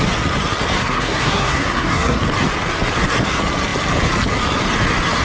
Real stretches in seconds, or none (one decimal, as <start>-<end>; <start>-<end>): 0.0-0.8; 2.2-5.2